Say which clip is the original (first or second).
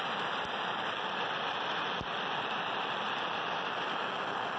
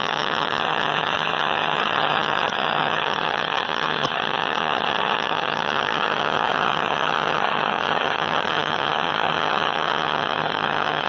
first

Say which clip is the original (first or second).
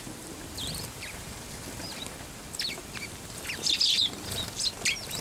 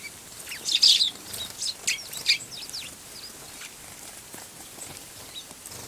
second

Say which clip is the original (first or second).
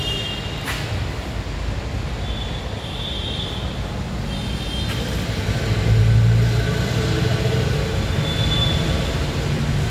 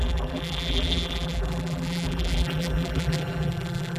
first